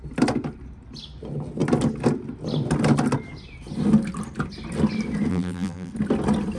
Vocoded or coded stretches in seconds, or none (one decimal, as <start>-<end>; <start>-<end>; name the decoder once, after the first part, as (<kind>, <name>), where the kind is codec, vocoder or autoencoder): 5.3-5.9 (vocoder, BigVGAN v2)

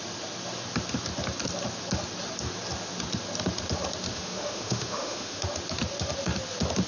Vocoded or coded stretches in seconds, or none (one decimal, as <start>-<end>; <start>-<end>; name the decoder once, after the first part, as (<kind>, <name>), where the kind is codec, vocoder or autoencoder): 4.1-5.4 (autoencoder, DAC-VAE)

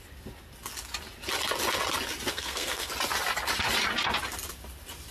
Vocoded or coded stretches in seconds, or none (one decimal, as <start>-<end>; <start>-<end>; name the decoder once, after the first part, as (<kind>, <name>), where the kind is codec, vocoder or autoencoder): 2.3-2.9 (codec, SNAC)